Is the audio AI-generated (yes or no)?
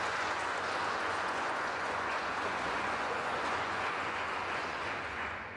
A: yes